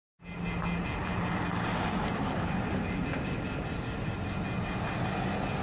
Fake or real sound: real